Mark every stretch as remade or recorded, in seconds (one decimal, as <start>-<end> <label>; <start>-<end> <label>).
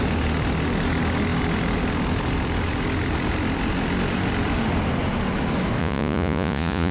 0.0-5.8 recorded; 5.8-6.9 remade